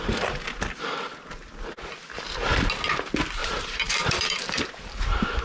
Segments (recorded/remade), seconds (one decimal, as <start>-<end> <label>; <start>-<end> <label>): 0.0-3.4 recorded; 3.4-5.4 remade